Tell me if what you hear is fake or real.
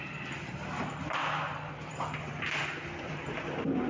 fake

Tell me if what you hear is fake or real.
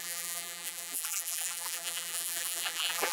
fake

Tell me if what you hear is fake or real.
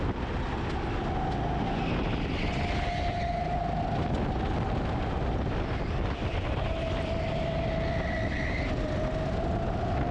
real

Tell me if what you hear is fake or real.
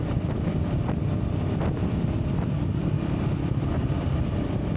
fake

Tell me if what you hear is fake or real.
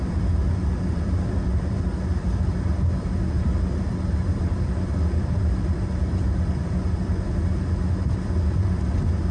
fake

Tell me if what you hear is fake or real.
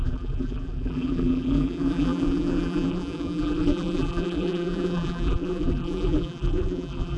fake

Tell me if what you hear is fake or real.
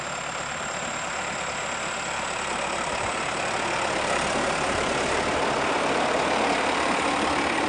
fake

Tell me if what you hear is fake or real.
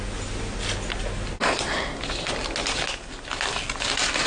real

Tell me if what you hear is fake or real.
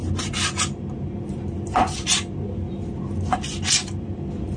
real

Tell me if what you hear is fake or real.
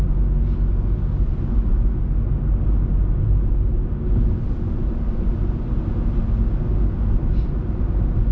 real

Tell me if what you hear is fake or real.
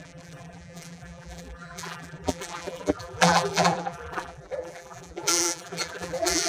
fake